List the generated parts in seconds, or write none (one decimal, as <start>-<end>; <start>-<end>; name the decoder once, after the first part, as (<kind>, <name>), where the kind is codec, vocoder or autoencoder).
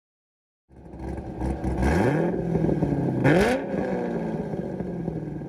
none